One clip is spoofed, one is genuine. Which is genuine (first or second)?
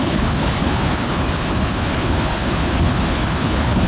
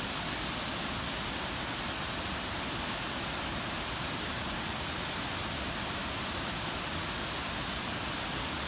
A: second